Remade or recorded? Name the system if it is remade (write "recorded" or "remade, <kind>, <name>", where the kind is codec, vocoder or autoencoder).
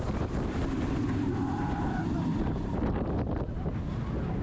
recorded